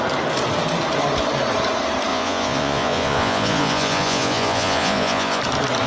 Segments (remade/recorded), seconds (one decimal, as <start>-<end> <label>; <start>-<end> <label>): 0.0-2.1 recorded; 2.1-5.4 remade; 5.4-5.9 recorded